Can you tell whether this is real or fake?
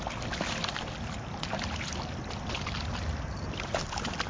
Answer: real